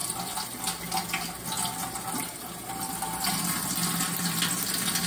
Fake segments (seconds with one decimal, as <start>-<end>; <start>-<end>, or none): 0.0-0.6